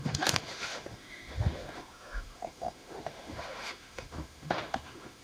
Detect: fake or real fake